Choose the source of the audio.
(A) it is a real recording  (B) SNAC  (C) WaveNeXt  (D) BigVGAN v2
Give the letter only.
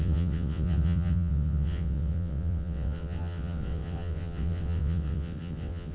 C